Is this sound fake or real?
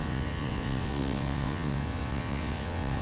fake